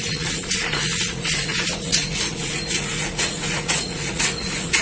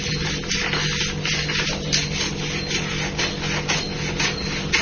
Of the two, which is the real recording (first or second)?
second